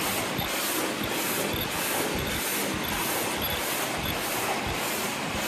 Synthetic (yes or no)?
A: no